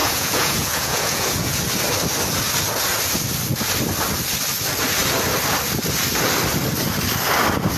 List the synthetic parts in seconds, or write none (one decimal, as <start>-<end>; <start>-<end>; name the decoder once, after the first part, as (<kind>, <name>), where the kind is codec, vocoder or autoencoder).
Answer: 0.0-1.6 (vocoder, Vocos)